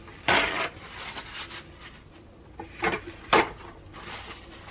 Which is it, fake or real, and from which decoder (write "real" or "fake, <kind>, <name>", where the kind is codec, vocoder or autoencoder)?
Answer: real